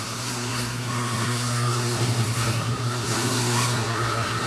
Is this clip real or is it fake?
fake